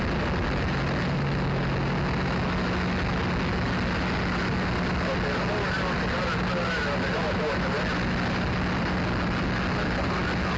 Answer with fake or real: real